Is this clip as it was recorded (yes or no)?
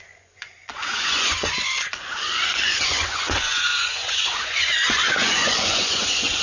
no